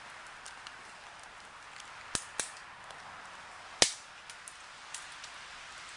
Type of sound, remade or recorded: recorded